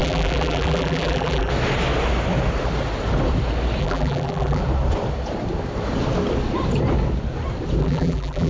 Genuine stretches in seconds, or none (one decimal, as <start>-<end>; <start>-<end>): 1.5-3.8; 4.6-7.8